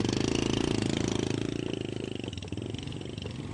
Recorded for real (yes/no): yes